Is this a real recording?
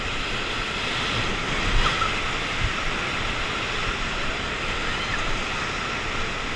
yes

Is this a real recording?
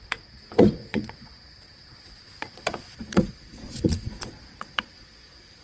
no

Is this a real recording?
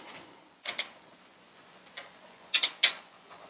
no